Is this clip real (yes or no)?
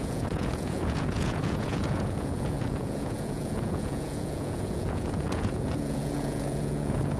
no